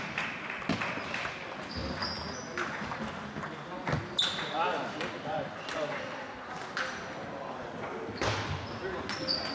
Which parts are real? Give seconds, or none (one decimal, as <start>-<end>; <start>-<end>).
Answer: 0.0-9.5